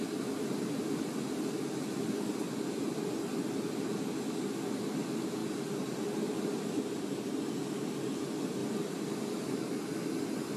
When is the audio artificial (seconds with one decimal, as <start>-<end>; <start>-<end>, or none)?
none